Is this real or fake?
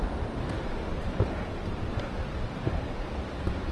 real